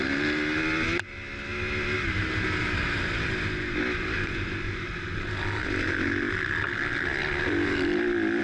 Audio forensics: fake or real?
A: real